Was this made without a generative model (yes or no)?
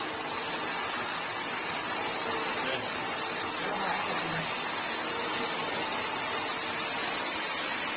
yes